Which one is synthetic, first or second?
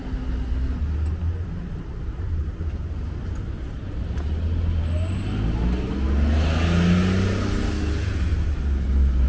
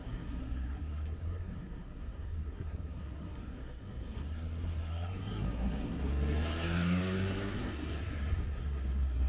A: second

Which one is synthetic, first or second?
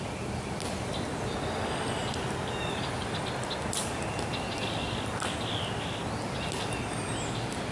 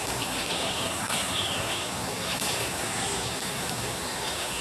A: second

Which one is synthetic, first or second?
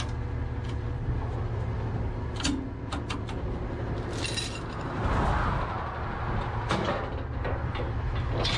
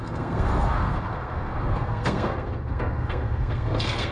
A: second